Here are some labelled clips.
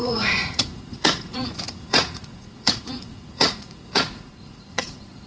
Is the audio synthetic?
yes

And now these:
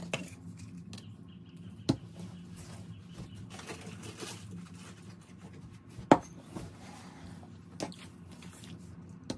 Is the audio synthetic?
no